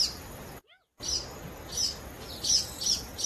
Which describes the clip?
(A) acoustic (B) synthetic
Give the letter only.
A